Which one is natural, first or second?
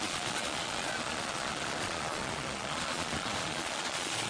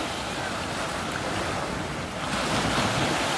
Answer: second